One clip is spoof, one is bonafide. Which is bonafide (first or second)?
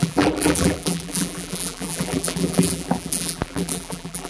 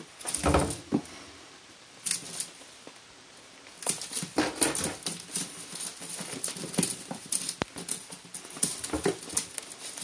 second